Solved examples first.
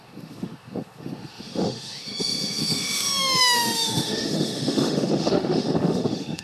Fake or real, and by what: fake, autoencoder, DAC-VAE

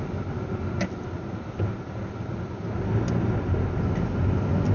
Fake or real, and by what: real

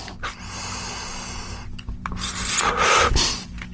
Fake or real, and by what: real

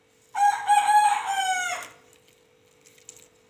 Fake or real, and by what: real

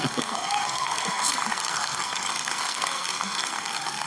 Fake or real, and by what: fake, codec, SNAC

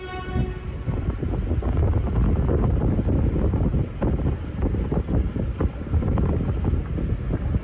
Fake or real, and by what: real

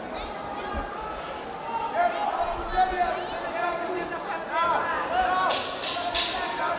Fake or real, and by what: real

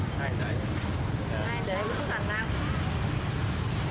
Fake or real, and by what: real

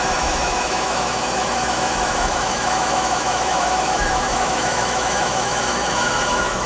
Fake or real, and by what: fake, autoencoder, DAC-VAE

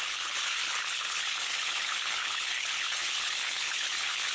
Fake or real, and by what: fake, codec, HILCodec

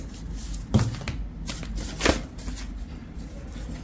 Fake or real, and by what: real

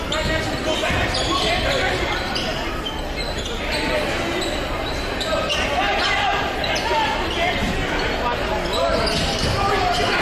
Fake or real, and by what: real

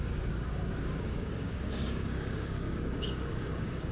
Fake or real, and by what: fake, codec, DAC